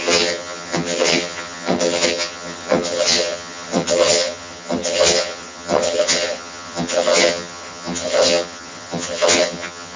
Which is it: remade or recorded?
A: remade